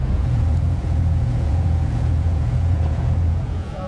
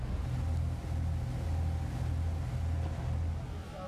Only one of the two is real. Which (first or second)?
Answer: second